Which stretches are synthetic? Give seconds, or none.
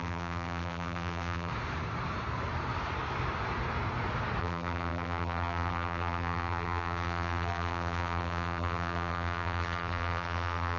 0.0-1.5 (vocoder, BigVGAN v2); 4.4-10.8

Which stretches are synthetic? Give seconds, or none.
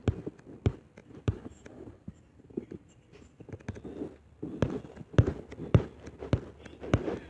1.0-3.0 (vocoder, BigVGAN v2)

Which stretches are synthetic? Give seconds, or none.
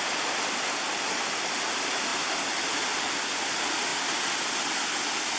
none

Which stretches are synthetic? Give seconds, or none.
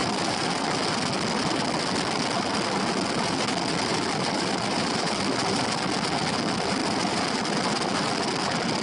3.9-5.1 (vocoder, BigVGAN v2); 6.8-8.1